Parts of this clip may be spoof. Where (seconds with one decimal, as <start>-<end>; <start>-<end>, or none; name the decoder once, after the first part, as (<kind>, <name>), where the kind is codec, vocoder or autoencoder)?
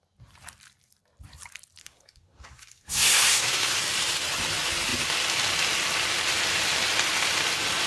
1.8-3.8 (codec, SNAC)